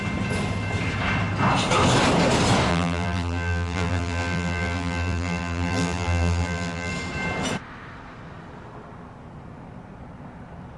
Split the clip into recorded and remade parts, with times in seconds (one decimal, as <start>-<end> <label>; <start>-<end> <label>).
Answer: 0.0-2.7 recorded; 2.7-6.9 remade; 6.9-10.8 recorded